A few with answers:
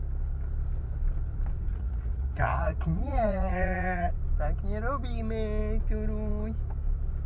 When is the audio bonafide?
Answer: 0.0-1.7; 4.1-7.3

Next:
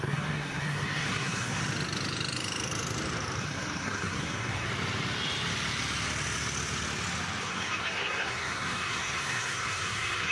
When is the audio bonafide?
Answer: 1.6-3.4; 4.7-7.4